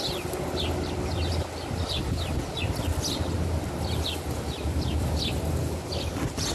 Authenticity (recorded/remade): recorded